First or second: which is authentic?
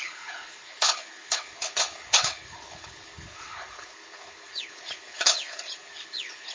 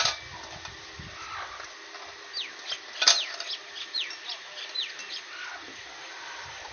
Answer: second